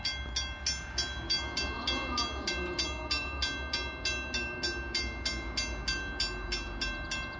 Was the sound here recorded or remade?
recorded